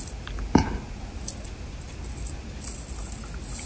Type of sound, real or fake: real